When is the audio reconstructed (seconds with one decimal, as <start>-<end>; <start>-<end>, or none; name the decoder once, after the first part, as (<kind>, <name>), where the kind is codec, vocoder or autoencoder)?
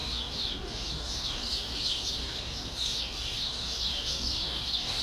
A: 0.0-5.0 (codec, DAC)